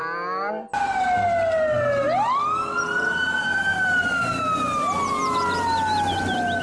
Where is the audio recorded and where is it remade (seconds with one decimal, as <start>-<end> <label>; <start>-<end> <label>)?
0.0-6.6 recorded